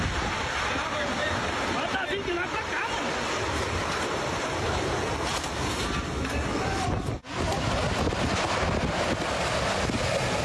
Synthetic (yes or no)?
no